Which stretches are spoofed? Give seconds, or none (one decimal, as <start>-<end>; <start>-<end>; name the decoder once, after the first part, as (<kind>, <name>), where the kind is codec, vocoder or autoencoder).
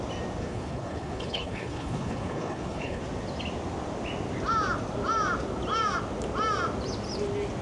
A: 0.4-3.0 (codec, HILCodec)